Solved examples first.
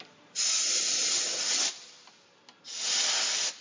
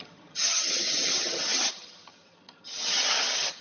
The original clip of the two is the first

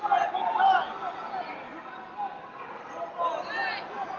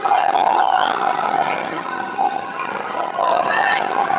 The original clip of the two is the first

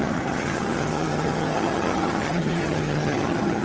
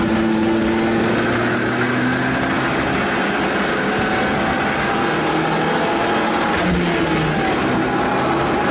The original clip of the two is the second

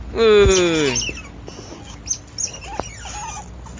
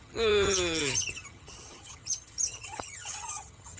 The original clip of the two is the first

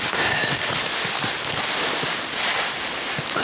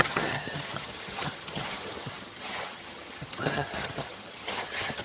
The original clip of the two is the first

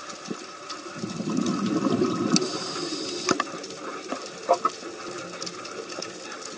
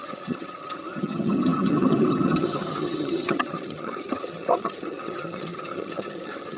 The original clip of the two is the first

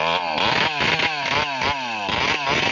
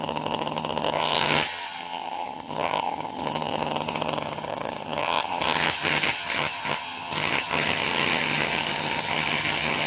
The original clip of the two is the first